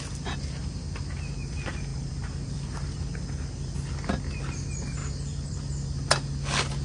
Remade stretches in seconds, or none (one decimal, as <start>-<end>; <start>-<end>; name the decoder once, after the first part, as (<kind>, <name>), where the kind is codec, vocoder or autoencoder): 1.9-3.0 (vocoder, BigVGAN v2); 5.0-5.6